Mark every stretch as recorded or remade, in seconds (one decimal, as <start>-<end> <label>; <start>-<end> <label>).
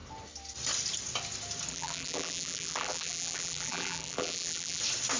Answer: 0.0-1.7 recorded; 1.7-4.8 remade; 4.8-5.2 recorded